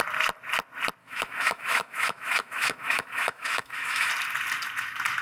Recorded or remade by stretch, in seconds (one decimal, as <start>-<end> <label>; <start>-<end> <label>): 0.0-1.0 recorded; 1.0-4.1 remade; 4.1-5.2 recorded